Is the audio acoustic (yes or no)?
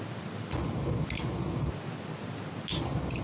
yes